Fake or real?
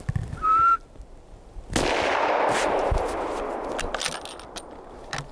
real